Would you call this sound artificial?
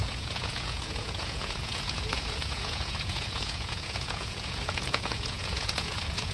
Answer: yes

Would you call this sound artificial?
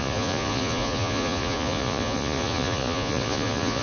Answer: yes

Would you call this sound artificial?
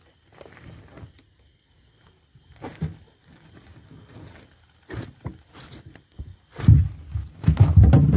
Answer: no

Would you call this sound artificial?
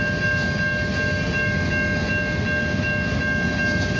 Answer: no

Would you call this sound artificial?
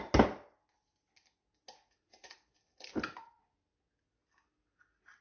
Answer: no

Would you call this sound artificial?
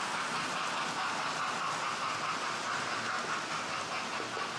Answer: no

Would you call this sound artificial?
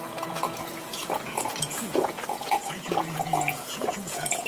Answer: yes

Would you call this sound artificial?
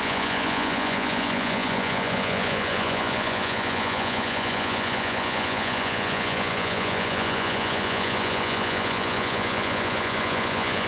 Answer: yes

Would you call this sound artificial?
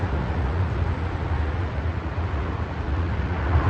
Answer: yes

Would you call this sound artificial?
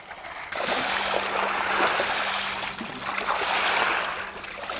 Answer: no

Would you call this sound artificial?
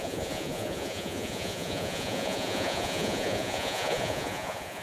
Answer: yes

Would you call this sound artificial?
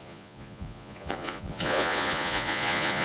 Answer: yes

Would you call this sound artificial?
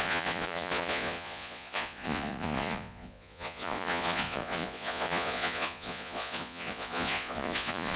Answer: yes